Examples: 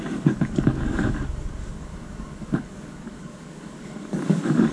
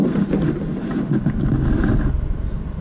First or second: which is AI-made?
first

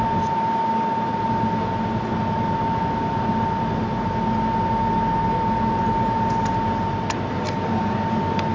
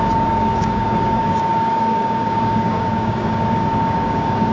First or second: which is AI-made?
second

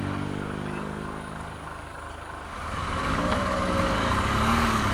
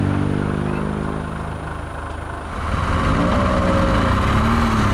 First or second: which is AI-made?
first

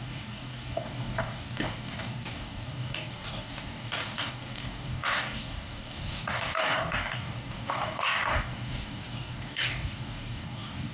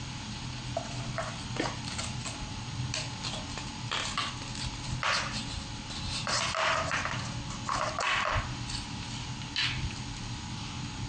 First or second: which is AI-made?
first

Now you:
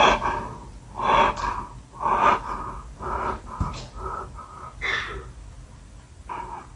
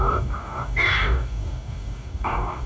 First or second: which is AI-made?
second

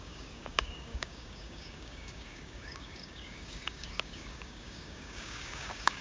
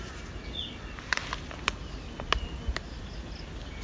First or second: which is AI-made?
first